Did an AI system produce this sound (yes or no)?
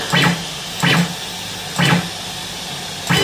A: no